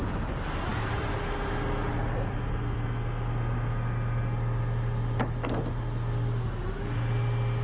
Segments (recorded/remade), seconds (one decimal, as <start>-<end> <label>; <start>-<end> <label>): 0.0-0.7 recorded; 0.7-2.4 remade; 2.4-7.6 recorded